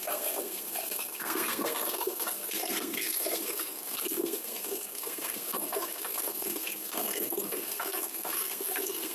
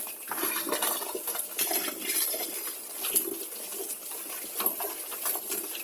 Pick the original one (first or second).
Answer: second